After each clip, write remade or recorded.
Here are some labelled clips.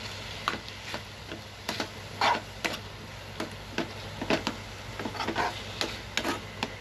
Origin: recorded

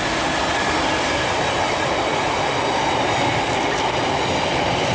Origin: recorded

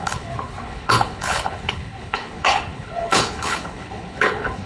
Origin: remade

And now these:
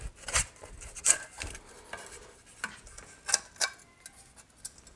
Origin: recorded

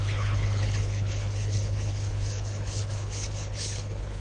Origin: remade